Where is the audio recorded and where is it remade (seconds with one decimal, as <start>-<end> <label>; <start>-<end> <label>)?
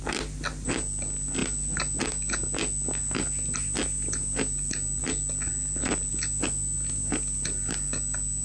0.0-8.4 recorded